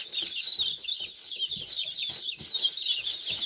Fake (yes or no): no